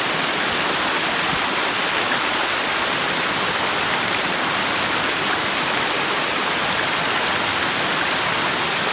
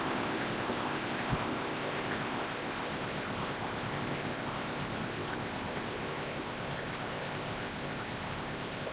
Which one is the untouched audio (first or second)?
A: first